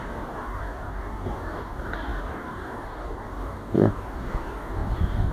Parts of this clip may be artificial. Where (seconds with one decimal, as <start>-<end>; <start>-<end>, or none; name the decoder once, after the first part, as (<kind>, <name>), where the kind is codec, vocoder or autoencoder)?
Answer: 0.0-5.3 (codec, DAC)